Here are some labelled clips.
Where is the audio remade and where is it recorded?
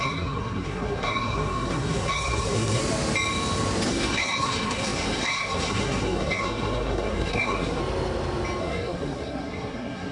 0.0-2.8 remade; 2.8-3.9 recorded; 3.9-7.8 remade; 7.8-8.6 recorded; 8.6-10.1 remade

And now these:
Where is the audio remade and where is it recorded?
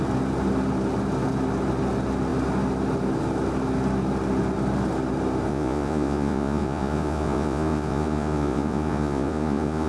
0.0-5.5 recorded; 5.5-9.9 remade